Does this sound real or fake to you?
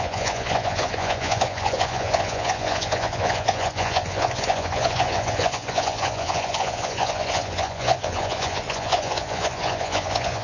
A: fake